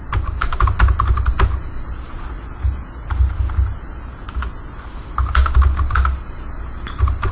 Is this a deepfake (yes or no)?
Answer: no